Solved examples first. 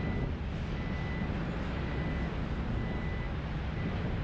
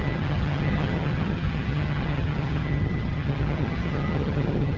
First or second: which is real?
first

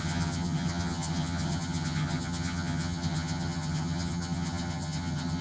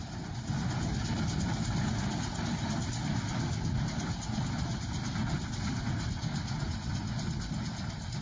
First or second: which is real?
second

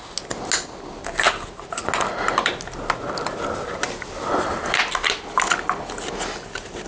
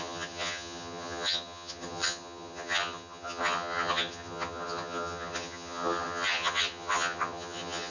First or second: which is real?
first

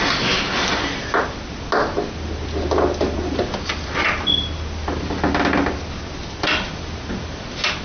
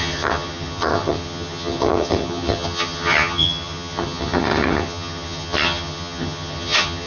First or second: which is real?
first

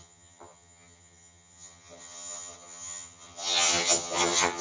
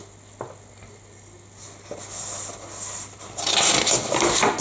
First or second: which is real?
second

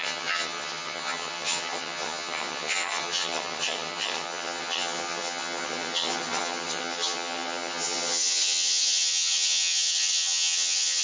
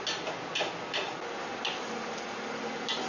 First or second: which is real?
second